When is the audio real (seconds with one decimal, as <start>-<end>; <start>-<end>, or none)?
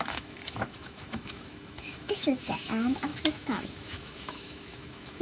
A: none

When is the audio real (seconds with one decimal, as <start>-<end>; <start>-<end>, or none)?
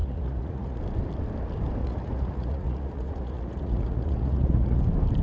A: 0.8-1.8; 4.8-5.2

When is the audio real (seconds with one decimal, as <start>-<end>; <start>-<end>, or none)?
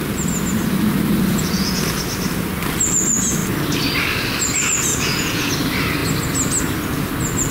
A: 0.0-1.3; 1.8-4.9; 5.5-7.5